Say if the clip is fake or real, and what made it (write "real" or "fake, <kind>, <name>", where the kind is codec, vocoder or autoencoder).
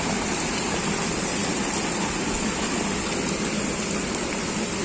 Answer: real